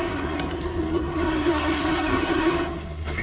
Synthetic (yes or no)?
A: yes